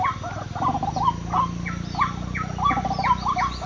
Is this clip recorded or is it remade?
recorded